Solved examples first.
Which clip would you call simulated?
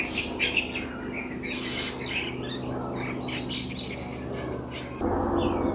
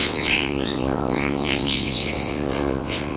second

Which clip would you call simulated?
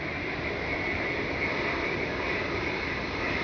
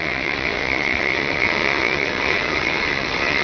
second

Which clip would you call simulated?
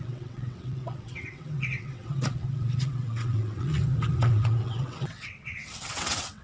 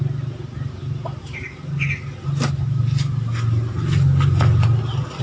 first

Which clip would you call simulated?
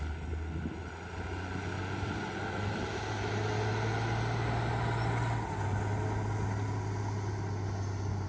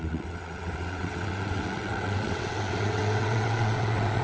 second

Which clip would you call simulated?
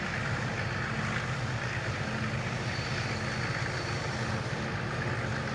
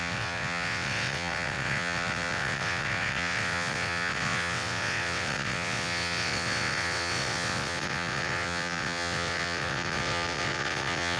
second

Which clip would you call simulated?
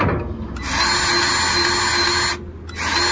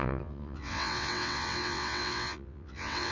second